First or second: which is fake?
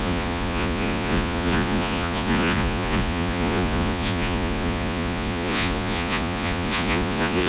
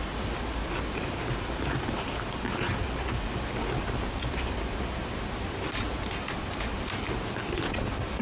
first